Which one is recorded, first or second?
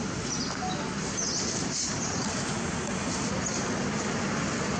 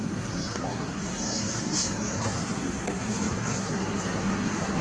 first